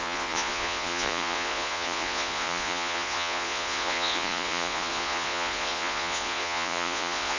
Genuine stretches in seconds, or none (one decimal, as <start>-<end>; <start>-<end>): none